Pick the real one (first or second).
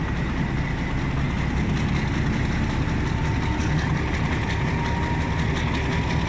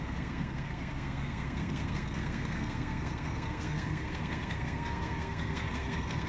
first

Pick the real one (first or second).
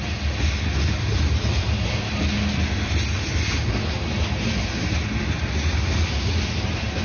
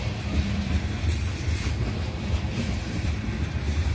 first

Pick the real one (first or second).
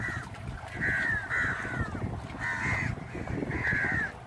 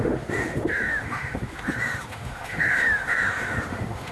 first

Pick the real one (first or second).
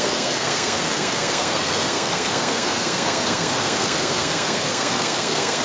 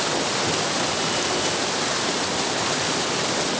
second